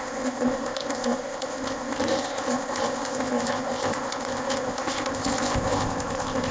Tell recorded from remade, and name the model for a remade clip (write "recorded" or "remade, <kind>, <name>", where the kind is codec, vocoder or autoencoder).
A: remade, codec, ZipCodec